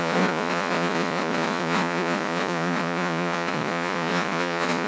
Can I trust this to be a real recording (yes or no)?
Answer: no